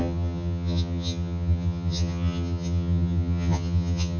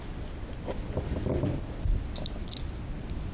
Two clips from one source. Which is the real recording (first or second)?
second